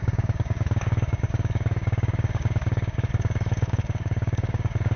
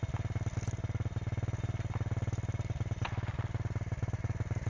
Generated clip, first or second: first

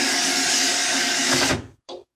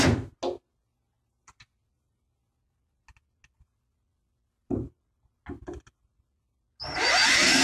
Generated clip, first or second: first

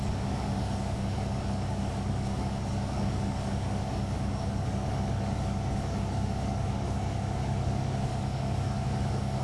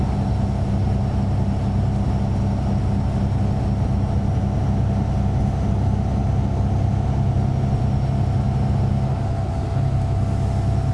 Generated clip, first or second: first